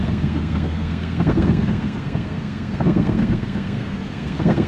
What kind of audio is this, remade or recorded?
remade